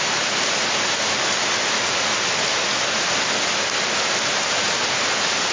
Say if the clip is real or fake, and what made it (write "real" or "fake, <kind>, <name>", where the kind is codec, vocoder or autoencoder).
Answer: real